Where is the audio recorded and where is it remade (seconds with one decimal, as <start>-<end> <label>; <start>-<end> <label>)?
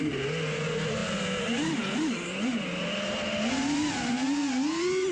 0.0-5.1 recorded